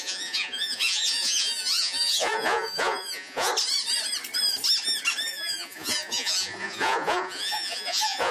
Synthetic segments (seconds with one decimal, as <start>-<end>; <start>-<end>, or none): 0.0-3.5; 5.3-8.3